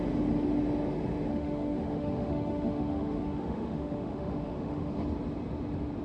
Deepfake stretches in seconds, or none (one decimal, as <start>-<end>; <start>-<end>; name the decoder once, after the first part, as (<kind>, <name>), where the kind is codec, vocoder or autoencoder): 1.3-4.9 (autoencoder, DAC-VAE)